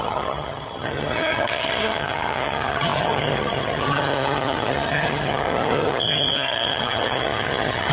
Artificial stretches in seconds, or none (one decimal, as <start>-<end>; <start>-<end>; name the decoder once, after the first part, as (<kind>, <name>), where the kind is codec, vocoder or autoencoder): 0.0-7.9 (vocoder, HiFi-GAN)